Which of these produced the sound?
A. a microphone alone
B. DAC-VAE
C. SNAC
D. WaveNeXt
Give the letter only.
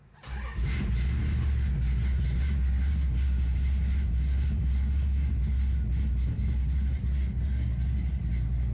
A